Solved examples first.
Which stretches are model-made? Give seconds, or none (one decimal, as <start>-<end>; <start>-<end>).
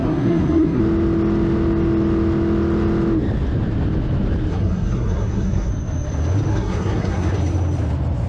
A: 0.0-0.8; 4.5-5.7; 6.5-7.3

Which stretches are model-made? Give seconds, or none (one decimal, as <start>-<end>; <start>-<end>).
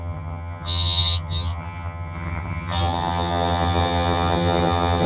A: 0.0-5.1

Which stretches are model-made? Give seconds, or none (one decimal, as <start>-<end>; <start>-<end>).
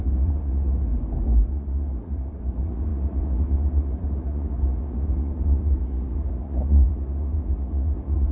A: 0.0-0.9; 1.5-8.3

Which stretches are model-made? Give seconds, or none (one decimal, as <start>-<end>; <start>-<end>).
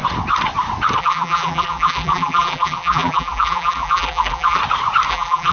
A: 1.0-4.6; 5.1-5.5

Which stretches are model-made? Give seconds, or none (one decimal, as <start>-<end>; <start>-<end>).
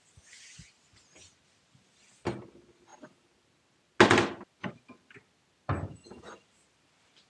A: none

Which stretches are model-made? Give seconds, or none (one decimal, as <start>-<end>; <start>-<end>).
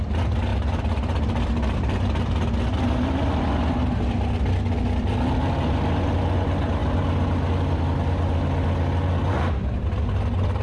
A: none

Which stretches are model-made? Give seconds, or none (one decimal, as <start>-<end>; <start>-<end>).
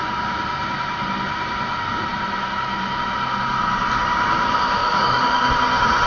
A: 4.8-5.5